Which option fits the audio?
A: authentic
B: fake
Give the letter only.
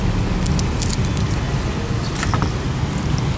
A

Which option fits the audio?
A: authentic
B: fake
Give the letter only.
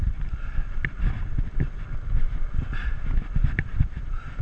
A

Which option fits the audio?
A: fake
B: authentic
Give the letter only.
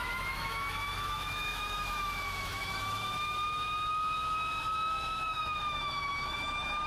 A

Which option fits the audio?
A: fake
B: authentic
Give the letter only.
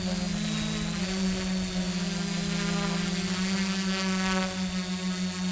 B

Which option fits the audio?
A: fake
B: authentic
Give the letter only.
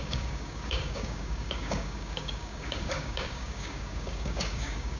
A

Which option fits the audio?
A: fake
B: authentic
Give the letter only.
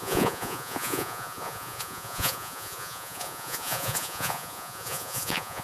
A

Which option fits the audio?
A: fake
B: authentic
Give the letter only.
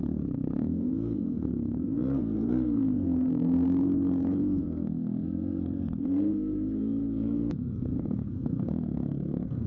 A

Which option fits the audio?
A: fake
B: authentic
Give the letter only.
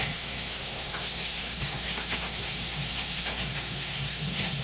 A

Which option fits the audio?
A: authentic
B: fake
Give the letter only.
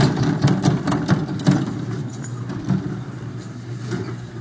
A